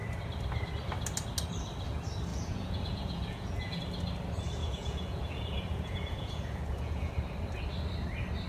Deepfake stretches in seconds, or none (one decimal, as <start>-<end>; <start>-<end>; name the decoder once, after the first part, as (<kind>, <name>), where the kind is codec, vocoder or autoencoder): 2.3-3.8 (vocoder, Vocos); 4.6-7.1

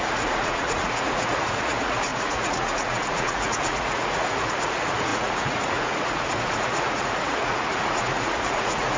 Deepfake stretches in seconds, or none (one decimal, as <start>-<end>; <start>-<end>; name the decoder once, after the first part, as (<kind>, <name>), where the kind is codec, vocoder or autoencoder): 0.0-9.0 (vocoder, Vocos)

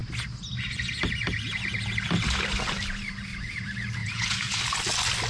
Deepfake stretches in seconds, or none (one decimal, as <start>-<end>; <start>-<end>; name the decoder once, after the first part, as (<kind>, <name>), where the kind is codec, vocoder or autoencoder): 4.0-4.6 (vocoder, Vocos)

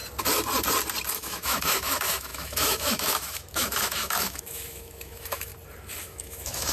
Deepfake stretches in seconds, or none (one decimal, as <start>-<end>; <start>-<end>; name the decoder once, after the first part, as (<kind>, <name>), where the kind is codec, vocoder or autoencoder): 1.1-5.5 (autoencoder, DAC-VAE); 6.0-6.7

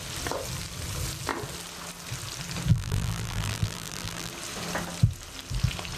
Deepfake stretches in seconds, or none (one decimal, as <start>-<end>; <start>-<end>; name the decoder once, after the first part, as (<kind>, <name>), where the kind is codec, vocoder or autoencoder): 2.7-4.3 (vocoder, BigVGAN v2)

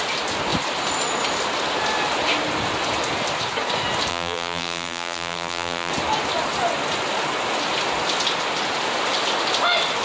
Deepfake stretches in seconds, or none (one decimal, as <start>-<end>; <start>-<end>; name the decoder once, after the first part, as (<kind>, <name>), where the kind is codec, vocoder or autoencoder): 4.1-5.9 (vocoder, BigVGAN v2)

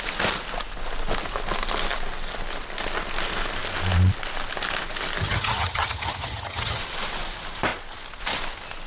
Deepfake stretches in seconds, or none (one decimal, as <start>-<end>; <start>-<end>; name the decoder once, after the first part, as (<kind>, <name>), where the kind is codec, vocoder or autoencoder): 5.2-6.8 (vocoder, HiFi-GAN)